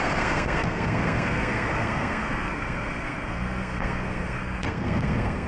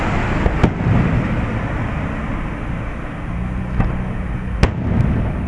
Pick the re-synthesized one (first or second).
first